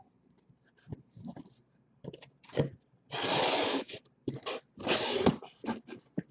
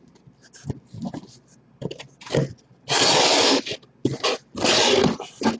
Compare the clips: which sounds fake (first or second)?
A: first